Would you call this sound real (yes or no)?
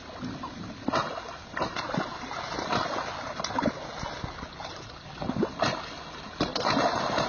yes